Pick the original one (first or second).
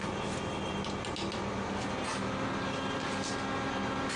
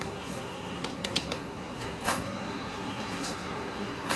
first